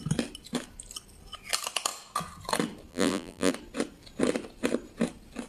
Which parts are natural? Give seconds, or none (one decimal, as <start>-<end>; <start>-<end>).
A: 0.0-2.9; 3.5-5.5